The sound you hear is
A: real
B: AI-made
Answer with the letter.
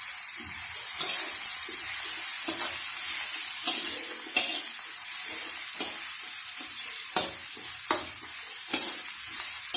A